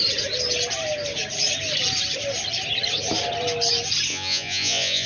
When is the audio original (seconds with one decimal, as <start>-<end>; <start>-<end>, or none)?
0.0-4.1